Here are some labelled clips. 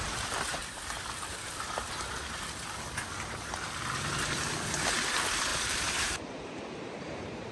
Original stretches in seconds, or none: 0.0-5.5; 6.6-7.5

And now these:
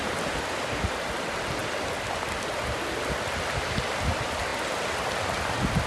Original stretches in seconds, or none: 0.0-5.9

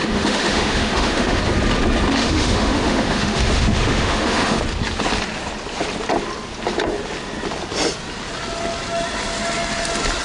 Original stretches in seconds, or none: 1.4-2.2; 4.6-10.2

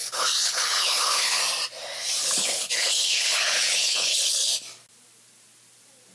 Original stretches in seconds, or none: 1.4-2.2; 4.5-6.1

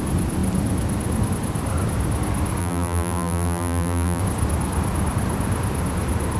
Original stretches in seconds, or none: 0.0-2.6; 4.2-6.4